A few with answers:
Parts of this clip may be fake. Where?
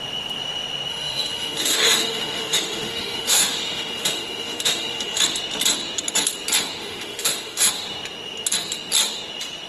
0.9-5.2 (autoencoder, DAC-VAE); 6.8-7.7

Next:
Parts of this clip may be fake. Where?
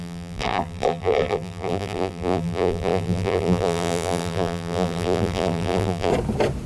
0.0-6.1 (vocoder, BigVGAN v2)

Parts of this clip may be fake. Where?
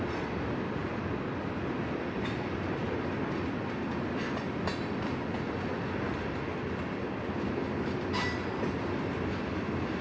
none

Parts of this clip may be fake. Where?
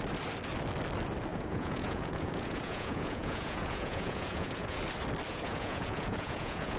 1.3-4.8 (vocoder, Vocos); 5.3-6.8